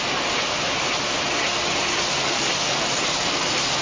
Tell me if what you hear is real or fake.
real